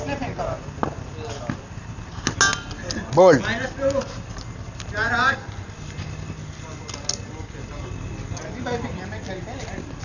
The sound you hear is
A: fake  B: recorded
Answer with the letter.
B